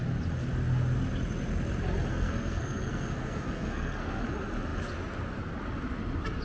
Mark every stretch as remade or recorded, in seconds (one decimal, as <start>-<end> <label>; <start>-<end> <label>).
0.0-2.1 recorded; 2.1-4.2 remade; 4.2-6.4 recorded